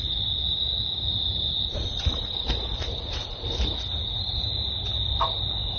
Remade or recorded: recorded